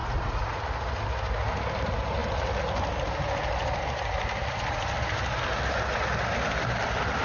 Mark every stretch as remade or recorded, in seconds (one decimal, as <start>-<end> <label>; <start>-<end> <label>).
0.0-0.6 remade; 0.6-7.2 recorded